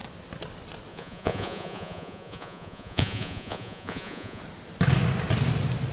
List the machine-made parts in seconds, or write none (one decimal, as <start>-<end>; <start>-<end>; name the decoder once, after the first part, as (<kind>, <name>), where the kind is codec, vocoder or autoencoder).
0.9-4.4 (vocoder, Vocos)

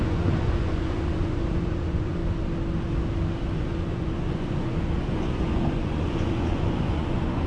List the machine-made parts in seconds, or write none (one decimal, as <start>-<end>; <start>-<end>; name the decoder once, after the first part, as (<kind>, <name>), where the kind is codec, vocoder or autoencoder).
0.0-2.2 (vocoder, Vocos); 3.6-7.5